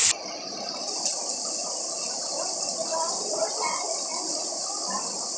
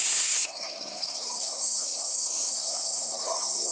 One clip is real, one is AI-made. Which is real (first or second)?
first